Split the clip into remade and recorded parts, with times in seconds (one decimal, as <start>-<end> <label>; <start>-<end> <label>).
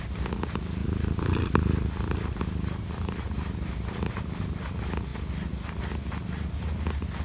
0.0-0.8 recorded; 0.8-4.1 remade; 4.1-7.2 recorded